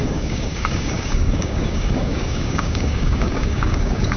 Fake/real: fake